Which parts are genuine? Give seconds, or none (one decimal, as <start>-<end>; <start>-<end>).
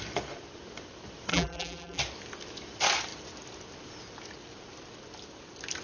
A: 0.0-1.3; 2.0-5.8